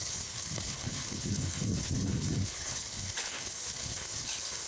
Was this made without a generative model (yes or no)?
no